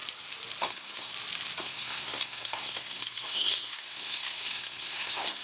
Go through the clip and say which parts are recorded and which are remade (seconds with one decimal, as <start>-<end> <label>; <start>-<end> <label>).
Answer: 0.0-0.6 recorded; 0.6-1.1 remade; 1.1-1.6 recorded; 1.6-5.4 remade